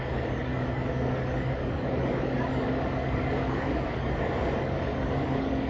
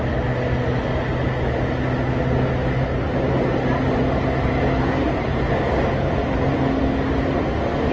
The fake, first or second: first